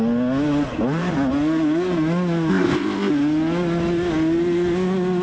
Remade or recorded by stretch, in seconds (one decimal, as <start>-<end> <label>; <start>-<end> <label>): 0.0-2.5 recorded; 2.5-3.1 remade; 3.1-5.2 recorded